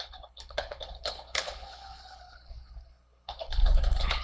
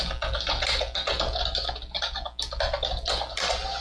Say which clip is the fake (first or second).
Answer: first